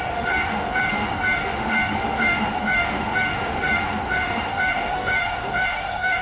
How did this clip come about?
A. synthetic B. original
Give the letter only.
A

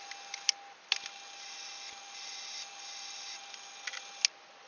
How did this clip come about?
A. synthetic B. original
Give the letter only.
B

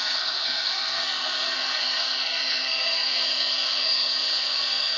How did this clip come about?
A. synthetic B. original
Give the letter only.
A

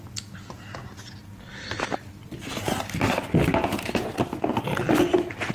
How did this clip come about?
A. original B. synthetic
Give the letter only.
A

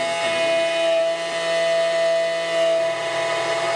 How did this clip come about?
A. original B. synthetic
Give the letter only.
A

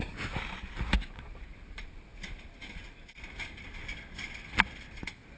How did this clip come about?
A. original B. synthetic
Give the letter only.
A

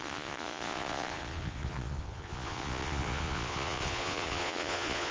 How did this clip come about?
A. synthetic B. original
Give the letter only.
A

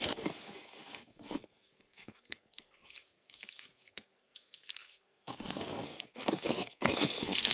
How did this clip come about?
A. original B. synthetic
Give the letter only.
B